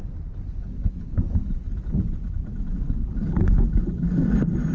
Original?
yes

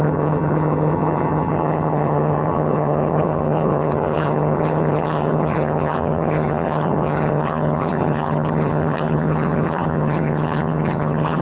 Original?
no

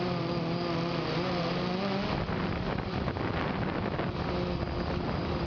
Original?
yes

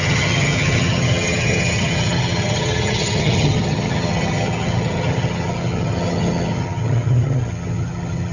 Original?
no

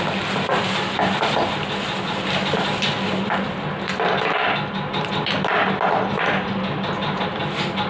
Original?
yes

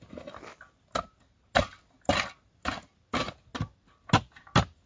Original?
yes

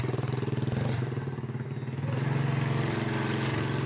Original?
yes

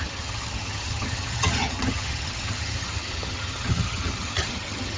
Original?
no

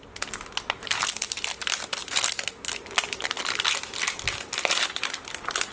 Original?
yes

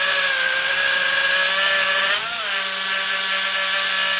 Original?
yes